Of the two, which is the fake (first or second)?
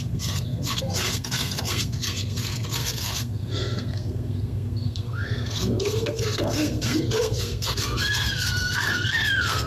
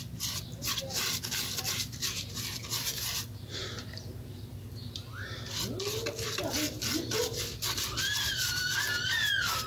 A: first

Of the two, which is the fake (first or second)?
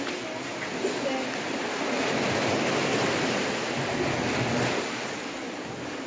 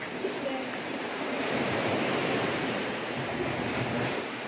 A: second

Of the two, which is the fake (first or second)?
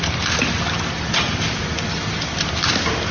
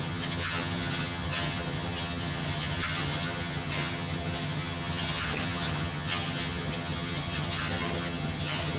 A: second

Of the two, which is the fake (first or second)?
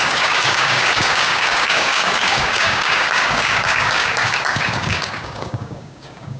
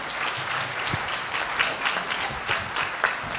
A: first